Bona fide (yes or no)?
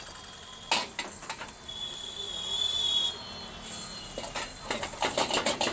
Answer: yes